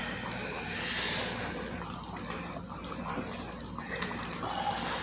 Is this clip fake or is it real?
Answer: real